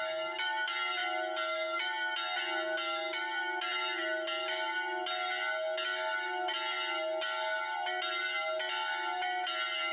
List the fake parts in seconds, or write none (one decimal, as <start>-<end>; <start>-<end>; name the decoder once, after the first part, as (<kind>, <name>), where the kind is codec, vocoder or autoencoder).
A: none